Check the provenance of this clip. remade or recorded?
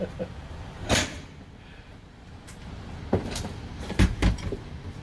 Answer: remade